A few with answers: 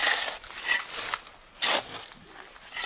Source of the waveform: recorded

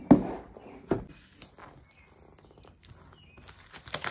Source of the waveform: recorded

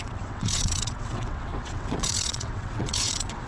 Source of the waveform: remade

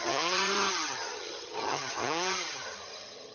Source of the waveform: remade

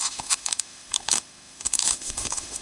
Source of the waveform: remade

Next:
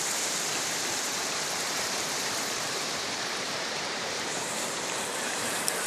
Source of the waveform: remade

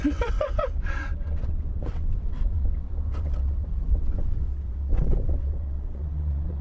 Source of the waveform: remade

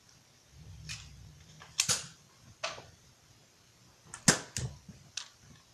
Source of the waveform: recorded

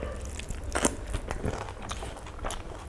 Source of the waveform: recorded